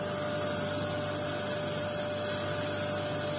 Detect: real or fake real